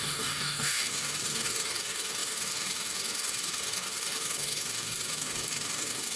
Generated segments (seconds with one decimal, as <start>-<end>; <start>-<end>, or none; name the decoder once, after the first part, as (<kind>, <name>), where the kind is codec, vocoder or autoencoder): 0.0-6.2 (codec, DAC)